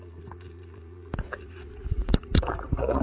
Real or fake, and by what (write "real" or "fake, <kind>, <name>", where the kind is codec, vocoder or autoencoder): fake, vocoder, Vocos